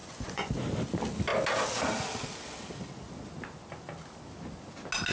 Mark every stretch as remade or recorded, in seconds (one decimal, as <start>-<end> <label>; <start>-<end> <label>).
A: 0.0-0.5 remade; 0.5-5.1 recorded